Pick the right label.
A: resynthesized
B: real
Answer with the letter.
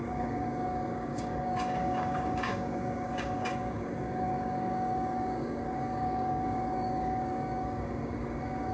A